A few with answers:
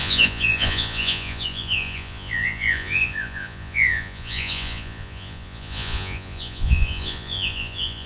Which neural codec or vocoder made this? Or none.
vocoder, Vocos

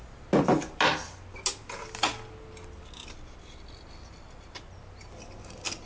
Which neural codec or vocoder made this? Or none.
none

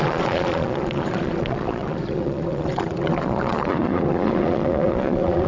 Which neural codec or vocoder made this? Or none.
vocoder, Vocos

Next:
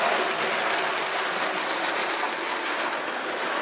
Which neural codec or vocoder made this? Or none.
none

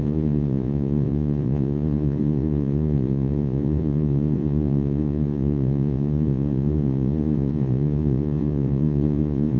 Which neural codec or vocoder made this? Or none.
vocoder, Vocos